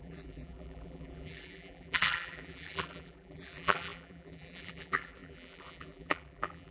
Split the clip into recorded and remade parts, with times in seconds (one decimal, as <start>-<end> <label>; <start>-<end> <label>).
0.0-6.7 remade